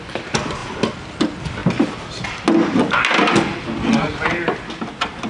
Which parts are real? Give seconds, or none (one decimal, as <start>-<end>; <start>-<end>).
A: 0.0-5.3